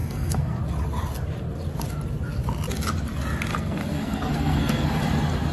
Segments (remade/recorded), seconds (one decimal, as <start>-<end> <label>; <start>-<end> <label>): 0.0-0.6 remade; 0.6-3.5 recorded; 3.5-5.0 remade; 5.0-5.5 recorded